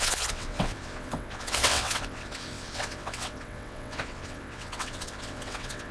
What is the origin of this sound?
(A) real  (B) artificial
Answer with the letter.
B